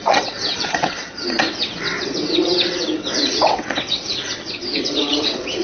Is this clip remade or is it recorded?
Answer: remade